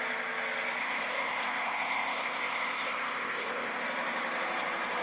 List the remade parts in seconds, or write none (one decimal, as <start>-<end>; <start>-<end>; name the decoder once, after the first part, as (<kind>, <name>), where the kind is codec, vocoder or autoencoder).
0.8-3.8 (codec, ZipCodec)